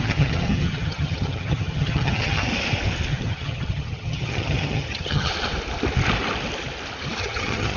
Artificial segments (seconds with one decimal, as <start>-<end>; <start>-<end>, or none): 0.0-2.5; 3.1-5.3; 7.2-7.8